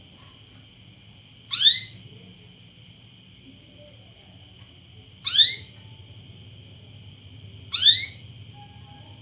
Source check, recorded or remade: recorded